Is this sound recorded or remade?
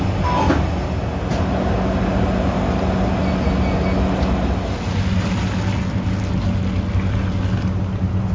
recorded